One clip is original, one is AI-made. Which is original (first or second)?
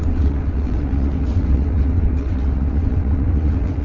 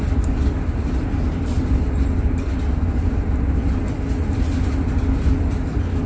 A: second